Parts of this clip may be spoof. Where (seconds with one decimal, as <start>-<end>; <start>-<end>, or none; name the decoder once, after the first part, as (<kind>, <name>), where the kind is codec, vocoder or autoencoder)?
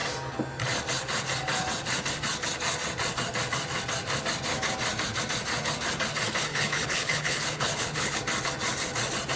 6.5-8.2 (codec, HILCodec)